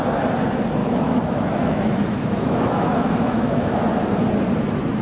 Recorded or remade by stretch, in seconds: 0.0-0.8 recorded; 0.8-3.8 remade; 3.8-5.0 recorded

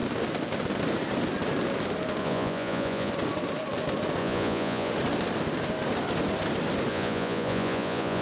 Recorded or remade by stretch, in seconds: 0.0-2.2 recorded; 2.2-3.1 remade; 3.1-4.2 recorded; 4.2-4.9 remade; 4.9-6.9 recorded; 6.9-8.2 remade

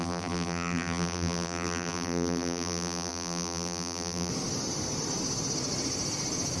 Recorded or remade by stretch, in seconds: 0.0-4.3 remade; 4.3-6.6 recorded

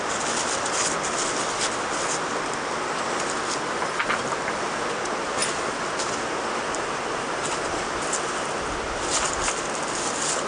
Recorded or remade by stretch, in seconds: 0.0-10.5 recorded

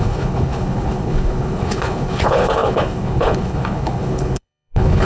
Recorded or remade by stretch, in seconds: 0.0-5.0 remade

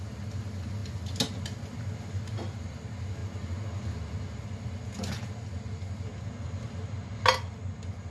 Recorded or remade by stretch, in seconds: 0.0-8.1 recorded

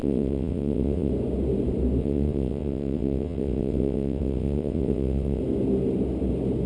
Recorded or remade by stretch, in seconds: 0.0-1.1 remade; 1.1-2.0 recorded; 2.0-5.4 remade; 5.4-6.7 recorded